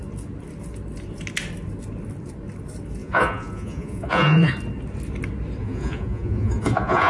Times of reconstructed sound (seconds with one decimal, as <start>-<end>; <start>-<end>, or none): 3.0-4.5; 5.6-7.1